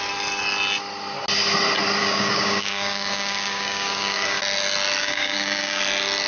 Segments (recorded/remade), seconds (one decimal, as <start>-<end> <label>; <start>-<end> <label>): 0.0-2.0 recorded; 2.0-4.4 remade; 4.4-5.0 recorded; 5.0-5.8 remade; 5.8-6.3 recorded